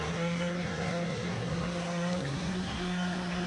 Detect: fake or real fake